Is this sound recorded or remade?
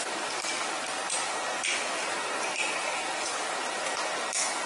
recorded